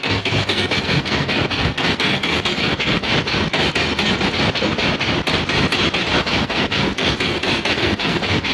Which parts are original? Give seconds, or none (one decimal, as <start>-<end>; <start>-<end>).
3.1-6.2